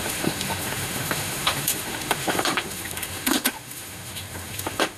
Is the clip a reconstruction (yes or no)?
yes